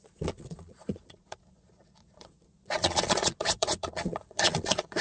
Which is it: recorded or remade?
remade